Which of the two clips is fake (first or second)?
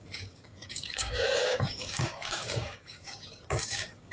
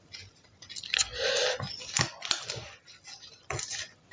first